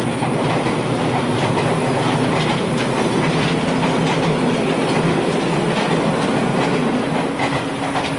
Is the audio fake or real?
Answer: real